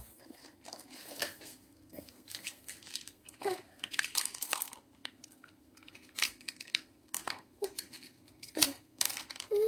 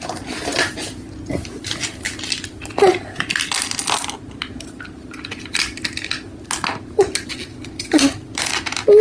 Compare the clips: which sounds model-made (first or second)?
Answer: first